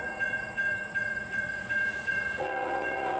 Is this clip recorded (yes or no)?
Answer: no